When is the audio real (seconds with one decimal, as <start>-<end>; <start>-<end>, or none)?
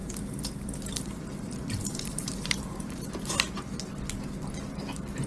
3.2-5.3